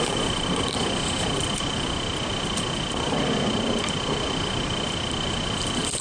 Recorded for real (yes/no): yes